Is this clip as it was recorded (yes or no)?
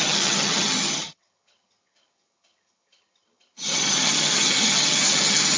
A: no